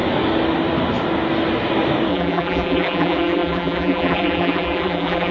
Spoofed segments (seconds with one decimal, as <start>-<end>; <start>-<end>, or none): 2.1-5.3